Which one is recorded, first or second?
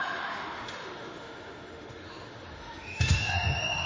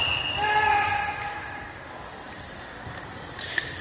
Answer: second